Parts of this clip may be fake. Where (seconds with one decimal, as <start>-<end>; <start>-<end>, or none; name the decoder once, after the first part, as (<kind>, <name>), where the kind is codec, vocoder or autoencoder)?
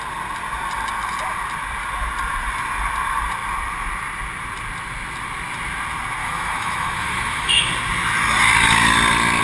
6.2-7.7 (autoencoder, DAC-VAE)